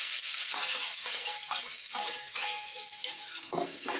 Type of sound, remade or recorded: remade